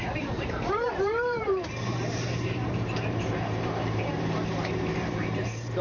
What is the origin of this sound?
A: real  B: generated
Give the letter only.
B